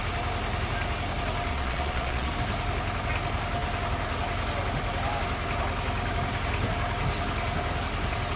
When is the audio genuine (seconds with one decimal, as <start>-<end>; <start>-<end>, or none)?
0.0-1.5; 2.3-8.4